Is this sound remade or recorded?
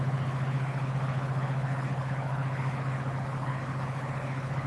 remade